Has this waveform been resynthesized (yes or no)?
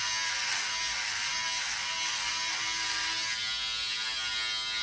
no